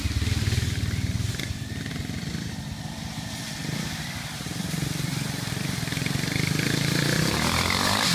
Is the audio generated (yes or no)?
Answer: yes